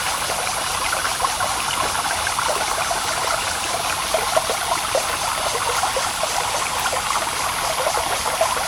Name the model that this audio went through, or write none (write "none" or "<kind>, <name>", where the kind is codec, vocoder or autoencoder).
none